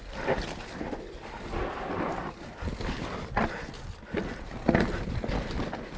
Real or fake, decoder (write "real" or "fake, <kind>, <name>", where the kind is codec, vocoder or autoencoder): real